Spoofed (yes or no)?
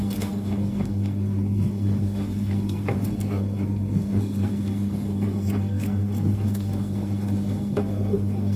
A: yes